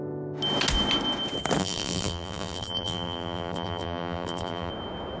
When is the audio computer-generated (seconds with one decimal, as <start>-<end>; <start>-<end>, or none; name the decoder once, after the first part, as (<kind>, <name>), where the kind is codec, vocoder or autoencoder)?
1.6-4.7 (vocoder, BigVGAN v2)